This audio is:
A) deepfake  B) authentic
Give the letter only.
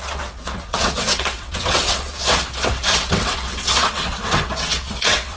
A